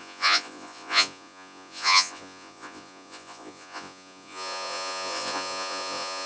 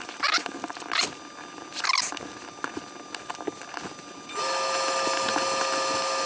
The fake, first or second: first